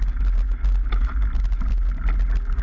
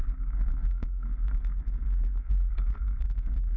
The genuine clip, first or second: first